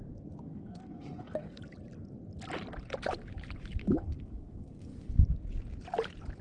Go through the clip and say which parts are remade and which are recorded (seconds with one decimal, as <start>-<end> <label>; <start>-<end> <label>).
0.0-0.5 recorded; 0.5-1.6 remade; 1.6-3.8 recorded; 3.8-5.2 remade; 5.2-6.4 recorded